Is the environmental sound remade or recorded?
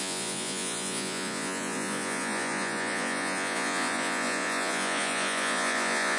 remade